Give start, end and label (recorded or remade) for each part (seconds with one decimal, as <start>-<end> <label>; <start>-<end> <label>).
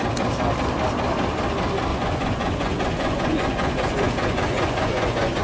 0.0-1.9 recorded; 1.9-5.4 remade